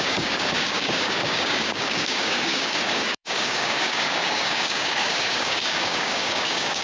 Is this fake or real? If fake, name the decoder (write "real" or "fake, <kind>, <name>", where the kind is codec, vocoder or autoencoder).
fake, codec, DAC